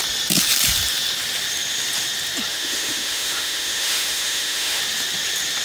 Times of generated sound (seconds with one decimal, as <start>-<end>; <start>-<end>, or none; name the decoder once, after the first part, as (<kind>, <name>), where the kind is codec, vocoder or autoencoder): 2.5-4.8 (autoencoder, DAC-VAE)

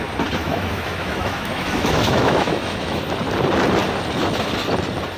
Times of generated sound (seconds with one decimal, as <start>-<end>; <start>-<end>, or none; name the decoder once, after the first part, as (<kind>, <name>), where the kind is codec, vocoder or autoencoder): 0.4-3.0 (autoencoder, DAC-VAE)

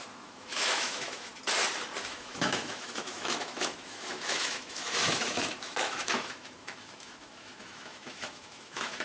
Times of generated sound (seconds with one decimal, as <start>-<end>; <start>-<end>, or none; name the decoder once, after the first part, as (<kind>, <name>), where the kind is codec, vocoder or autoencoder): 0.0-1.3 (autoencoder, DAC-VAE); 2.0-9.0